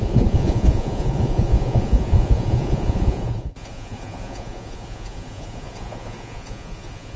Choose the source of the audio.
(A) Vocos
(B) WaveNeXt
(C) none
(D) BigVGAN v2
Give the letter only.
A